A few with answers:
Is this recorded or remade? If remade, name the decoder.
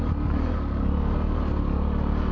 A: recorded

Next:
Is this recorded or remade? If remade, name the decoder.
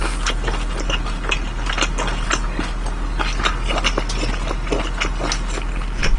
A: recorded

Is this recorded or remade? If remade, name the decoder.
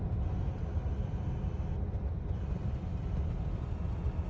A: recorded